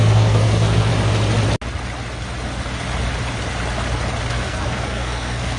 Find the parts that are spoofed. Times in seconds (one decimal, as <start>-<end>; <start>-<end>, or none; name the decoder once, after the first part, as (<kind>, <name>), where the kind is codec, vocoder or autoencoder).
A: 0.0-0.9 (codec, SNAC); 4.3-5.6